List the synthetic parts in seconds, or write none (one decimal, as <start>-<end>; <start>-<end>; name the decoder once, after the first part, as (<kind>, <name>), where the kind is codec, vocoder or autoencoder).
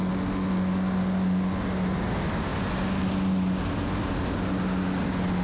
none